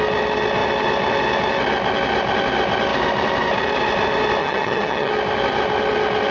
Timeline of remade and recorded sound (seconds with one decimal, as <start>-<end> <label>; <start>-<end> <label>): 0.0-4.4 recorded; 4.4-5.1 remade; 5.1-6.3 recorded